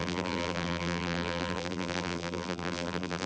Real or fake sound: fake